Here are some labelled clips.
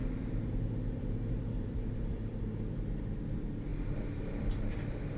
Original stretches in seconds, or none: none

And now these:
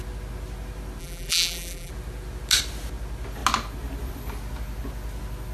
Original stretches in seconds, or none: 0.0-1.0; 1.9-5.5